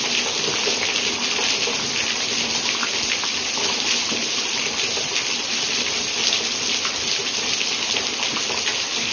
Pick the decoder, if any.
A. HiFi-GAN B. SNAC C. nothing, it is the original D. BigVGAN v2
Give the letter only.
C